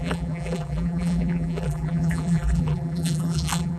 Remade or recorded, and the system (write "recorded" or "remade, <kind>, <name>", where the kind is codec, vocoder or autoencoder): remade, vocoder, BigVGAN v2